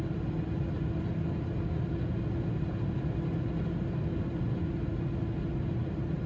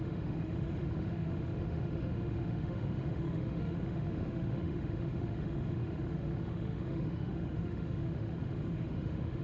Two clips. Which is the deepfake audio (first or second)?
second